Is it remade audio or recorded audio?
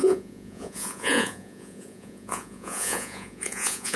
remade